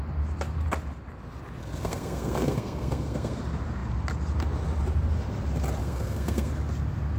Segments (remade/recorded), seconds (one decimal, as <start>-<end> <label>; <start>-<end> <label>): 0.0-1.6 recorded; 1.6-3.4 remade; 3.4-5.8 recorded; 5.8-6.5 remade; 6.5-7.2 recorded